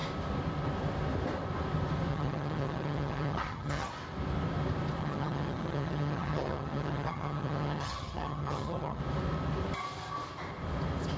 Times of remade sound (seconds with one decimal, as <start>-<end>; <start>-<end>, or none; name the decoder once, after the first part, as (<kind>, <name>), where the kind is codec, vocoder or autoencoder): 2.1-3.9 (vocoder, HiFi-GAN); 5.0-9.0